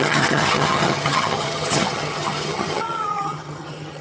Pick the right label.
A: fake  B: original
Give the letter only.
A